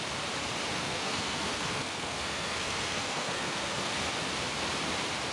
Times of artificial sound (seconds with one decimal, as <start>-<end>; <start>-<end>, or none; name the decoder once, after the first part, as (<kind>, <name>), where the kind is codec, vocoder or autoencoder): 0.7-3.9 (codec, SNAC)